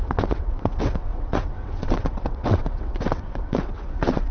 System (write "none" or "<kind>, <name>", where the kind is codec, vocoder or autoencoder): vocoder, WaveNeXt